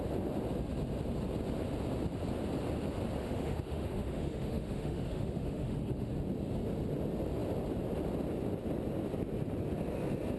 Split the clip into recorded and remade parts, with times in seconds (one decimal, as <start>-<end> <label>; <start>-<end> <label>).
0.0-3.2 recorded; 3.2-6.1 remade; 6.1-10.4 recorded